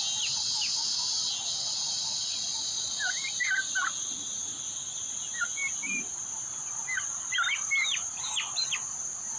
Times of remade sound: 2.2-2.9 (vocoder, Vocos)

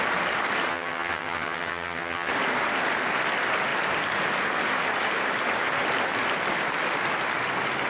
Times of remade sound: 0.7-2.3 (vocoder, HiFi-GAN)

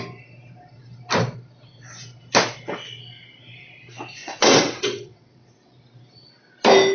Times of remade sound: 4.2-5.8 (vocoder, WaveNeXt)

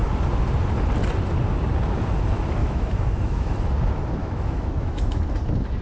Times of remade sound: 2.6-3.6 (autoencoder, DAC-VAE); 4.2-5.2

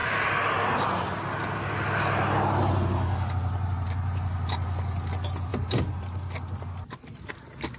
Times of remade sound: none

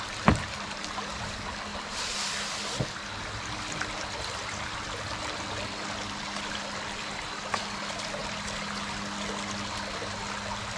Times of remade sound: none